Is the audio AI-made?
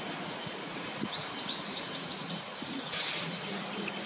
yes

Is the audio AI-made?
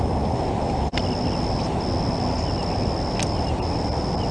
no